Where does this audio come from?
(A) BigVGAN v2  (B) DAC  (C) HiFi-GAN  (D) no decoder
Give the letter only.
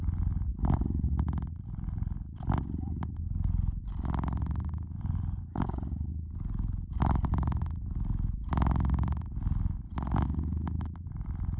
D